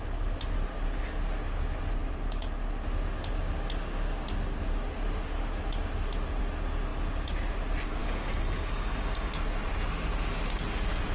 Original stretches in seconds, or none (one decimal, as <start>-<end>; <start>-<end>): 0.0-8.0; 9.3-11.1